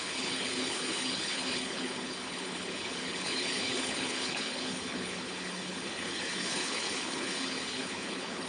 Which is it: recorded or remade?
remade